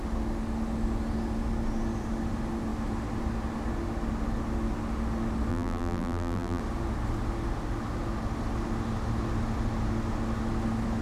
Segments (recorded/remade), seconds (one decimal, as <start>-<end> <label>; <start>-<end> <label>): 0.0-5.5 recorded; 5.5-6.6 remade; 6.6-11.0 recorded